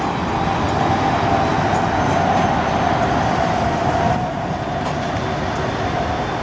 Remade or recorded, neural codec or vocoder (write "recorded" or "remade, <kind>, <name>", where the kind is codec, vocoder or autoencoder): recorded